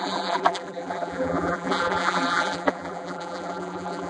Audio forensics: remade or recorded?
remade